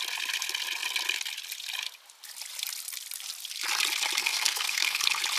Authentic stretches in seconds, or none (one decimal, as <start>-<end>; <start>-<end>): 0.0-4.2; 5.0-5.4